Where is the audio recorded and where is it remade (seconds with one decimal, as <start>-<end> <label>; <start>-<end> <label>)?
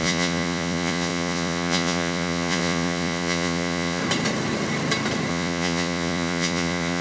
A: 0.0-4.0 remade; 4.0-5.3 recorded; 5.3-7.0 remade